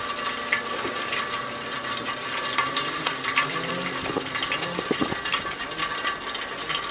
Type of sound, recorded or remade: remade